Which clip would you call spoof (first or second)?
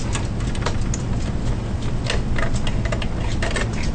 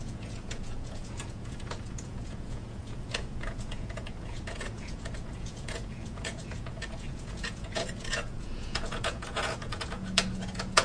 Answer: second